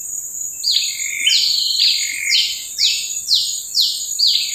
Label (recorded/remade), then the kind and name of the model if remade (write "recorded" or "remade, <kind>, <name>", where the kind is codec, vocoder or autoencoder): recorded